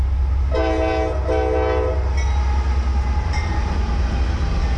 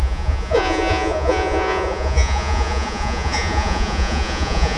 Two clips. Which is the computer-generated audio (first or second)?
second